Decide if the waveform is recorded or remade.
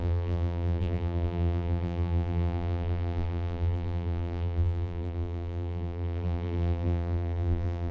remade